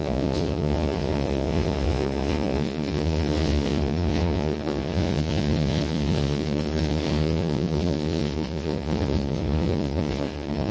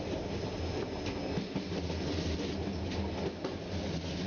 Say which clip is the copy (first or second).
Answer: first